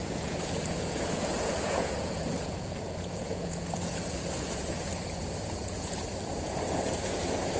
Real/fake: fake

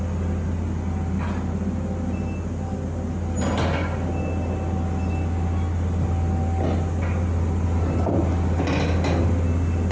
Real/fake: real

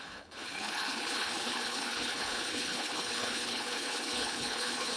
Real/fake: fake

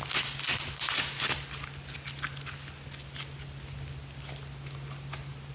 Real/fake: real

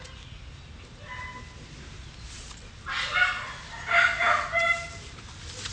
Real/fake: real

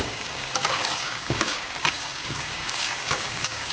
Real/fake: fake